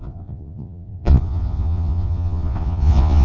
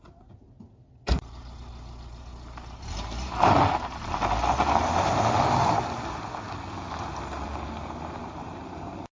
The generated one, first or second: first